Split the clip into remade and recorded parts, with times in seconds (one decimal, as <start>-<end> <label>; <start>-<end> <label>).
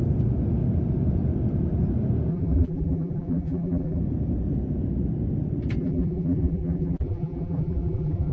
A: 0.0-2.3 recorded; 2.3-4.0 remade; 4.0-5.8 recorded; 5.8-8.3 remade